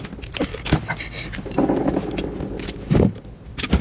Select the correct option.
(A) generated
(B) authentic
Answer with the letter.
B